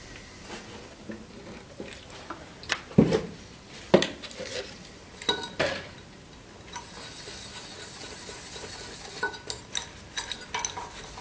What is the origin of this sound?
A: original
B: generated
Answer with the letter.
A